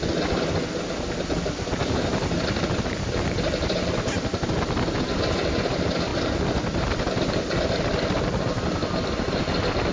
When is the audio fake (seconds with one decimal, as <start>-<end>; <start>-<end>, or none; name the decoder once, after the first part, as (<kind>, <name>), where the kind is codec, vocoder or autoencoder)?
none